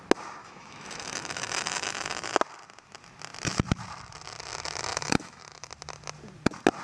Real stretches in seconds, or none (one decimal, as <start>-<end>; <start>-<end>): 0.0-0.4; 2.4-4.9; 5.7-6.8